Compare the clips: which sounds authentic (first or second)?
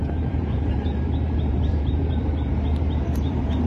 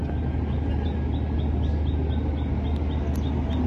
second